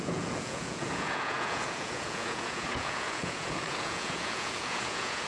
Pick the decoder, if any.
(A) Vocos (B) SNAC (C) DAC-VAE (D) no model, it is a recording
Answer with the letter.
A